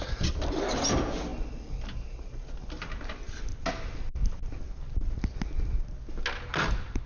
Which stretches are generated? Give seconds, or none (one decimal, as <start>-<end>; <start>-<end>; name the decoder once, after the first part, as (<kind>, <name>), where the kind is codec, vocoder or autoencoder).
none